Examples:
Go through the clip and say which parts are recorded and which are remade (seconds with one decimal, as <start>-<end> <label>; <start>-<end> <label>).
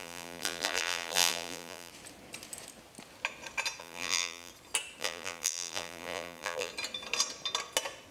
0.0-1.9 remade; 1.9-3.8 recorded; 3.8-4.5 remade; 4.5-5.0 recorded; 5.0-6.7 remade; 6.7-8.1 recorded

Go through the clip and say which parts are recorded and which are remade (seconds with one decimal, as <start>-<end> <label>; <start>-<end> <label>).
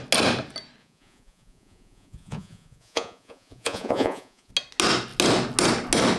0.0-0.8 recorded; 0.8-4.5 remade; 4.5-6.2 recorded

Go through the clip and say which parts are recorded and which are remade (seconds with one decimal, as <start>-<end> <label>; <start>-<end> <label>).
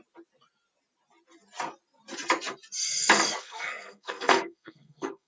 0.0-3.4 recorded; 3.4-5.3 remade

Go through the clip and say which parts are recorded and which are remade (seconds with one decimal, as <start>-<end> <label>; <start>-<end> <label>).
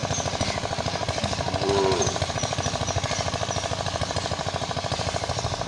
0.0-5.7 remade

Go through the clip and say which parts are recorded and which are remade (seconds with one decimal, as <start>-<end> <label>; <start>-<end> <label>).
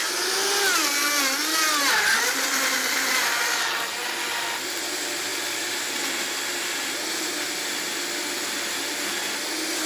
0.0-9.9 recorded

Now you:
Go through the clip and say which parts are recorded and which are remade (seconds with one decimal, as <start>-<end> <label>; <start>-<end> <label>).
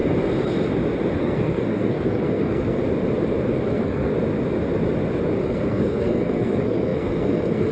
0.0-1.2 recorded; 1.2-2.8 remade; 2.8-3.5 recorded; 3.5-4.1 remade; 4.1-5.4 recorded; 5.4-7.7 remade